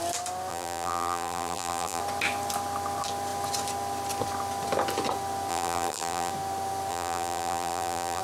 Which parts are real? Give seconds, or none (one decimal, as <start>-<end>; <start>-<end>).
0.0-0.5; 2.0-5.5; 6.3-6.9